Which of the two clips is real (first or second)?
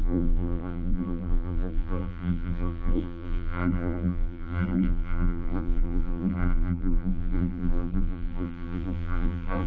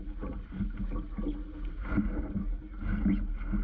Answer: second